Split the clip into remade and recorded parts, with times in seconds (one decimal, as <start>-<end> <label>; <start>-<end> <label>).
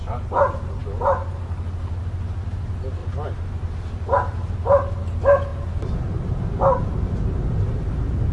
0.0-3.0 recorded; 3.0-3.7 remade; 3.7-8.3 recorded